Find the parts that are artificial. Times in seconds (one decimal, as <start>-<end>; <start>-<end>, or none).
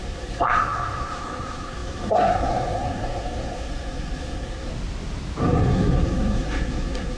0.0-4.7; 5.4-7.2